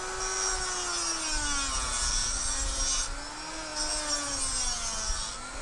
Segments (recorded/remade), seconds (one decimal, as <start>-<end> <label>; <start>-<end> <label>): 0.0-5.6 recorded